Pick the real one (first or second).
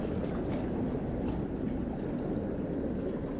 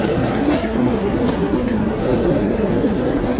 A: first